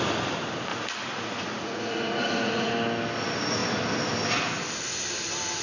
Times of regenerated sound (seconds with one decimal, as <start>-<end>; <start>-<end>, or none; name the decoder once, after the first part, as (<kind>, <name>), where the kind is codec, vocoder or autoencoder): 0.7-2.7 (vocoder, Vocos)